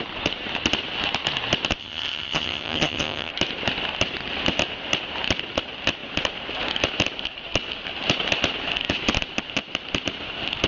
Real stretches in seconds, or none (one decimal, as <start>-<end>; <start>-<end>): 0.0-1.8; 3.3-10.7